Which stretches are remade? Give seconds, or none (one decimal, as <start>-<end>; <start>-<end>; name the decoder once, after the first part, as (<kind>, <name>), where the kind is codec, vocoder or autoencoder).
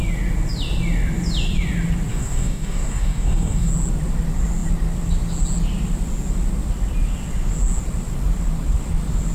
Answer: 2.1-3.7 (codec, DAC)